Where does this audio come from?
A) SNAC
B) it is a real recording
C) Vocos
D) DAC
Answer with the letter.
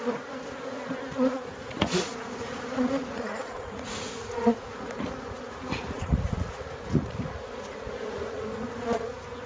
C